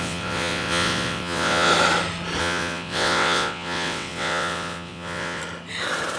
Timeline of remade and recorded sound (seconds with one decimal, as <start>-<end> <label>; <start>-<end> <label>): 0.0-1.7 remade; 1.7-2.4 recorded; 2.4-5.4 remade; 5.4-6.2 recorded